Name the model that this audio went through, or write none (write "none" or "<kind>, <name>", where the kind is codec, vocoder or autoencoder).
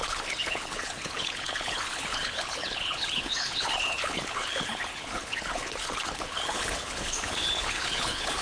codec, HILCodec